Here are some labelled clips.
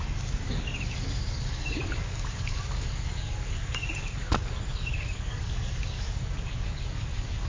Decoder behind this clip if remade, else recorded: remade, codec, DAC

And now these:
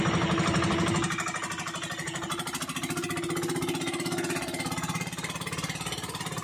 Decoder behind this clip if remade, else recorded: recorded